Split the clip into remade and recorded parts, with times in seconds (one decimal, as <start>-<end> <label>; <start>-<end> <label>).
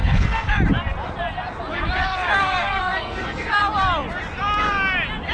0.0-0.5 remade; 0.5-2.0 recorded; 2.0-3.6 remade; 3.6-5.3 recorded